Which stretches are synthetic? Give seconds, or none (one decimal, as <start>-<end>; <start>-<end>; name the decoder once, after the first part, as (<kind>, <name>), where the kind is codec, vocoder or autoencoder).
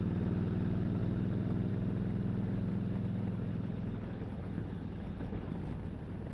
3.5-5.5 (codec, HILCodec)